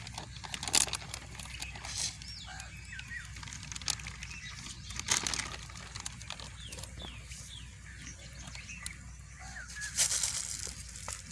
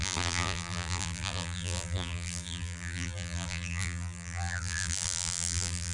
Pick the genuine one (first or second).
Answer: first